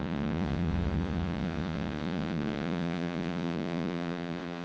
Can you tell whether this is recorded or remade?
remade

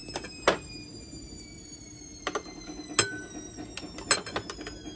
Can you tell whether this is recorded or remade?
recorded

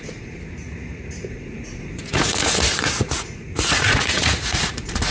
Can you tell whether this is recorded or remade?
remade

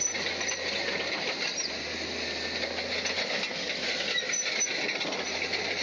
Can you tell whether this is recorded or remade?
recorded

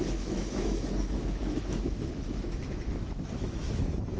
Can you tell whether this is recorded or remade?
remade